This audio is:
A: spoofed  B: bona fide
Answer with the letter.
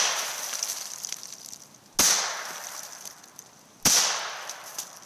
B